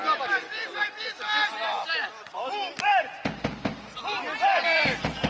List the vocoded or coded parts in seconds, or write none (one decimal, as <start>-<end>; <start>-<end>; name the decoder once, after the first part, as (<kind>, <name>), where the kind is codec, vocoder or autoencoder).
none